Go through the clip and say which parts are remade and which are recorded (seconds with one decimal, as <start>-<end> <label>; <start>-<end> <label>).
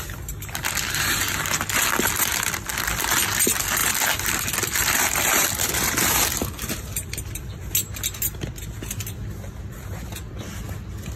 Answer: 0.0-3.8 recorded; 3.8-7.7 remade; 7.7-11.2 recorded